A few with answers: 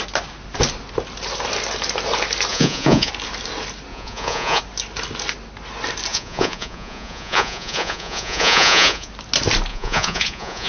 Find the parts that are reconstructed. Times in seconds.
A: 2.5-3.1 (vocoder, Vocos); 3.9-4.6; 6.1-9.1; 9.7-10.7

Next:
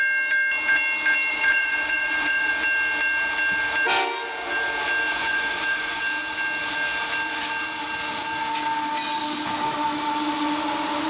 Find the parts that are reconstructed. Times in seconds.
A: 1.3-2.5 (vocoder, Vocos); 5.1-6.0

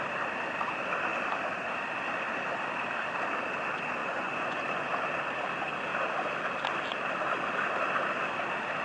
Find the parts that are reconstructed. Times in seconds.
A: 4.0-4.9 (vocoder, Vocos)

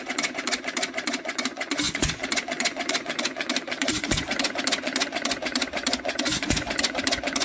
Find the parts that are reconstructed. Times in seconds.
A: 0.0-7.4 (vocoder, Vocos)

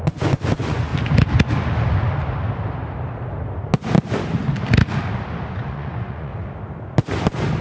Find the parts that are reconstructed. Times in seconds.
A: 0.0-0.9 (vocoder, Vocos); 5.5-6.3

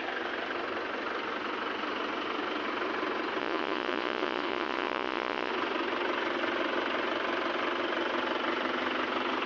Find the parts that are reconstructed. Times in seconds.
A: 3.4-5.5 (vocoder, Vocos)